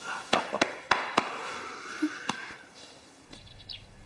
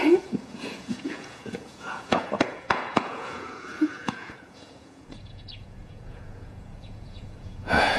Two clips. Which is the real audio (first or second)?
first